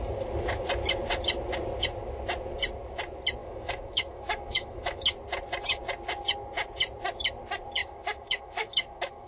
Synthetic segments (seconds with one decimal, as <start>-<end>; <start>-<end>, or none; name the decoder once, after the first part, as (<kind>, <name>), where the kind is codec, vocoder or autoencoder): 3.4-5.0 (autoencoder, DAC-VAE); 7.8-9.3